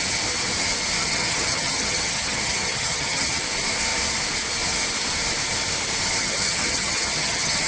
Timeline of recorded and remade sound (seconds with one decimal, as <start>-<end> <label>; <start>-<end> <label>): 0.0-1.0 recorded; 1.0-3.4 remade; 3.4-6.2 recorded; 6.2-7.7 remade